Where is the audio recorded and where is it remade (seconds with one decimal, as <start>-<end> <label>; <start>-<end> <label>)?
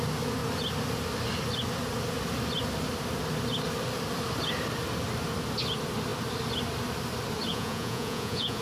0.0-7.5 recorded; 7.5-8.6 remade